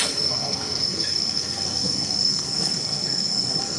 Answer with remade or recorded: remade